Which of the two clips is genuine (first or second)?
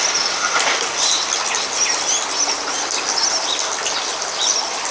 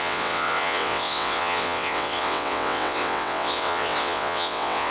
first